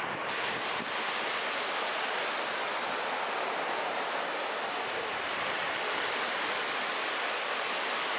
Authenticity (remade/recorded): recorded